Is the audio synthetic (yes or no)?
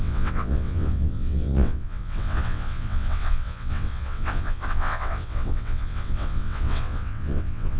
yes